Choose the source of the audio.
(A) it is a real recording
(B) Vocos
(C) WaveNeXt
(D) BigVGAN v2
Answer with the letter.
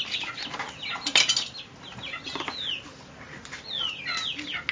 A